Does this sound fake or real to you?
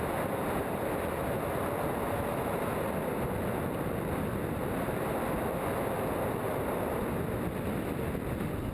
real